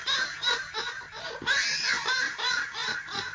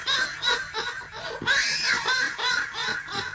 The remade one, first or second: first